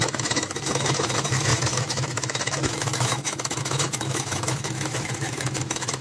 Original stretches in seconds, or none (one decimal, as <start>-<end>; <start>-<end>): none